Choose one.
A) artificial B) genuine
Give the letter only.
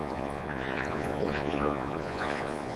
A